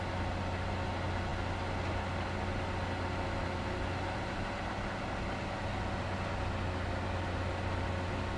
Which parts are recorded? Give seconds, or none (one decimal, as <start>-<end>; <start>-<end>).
0.0-8.4